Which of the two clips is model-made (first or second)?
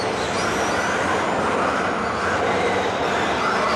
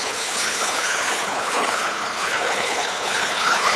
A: second